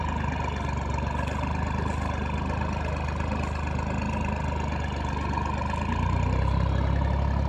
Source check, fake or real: real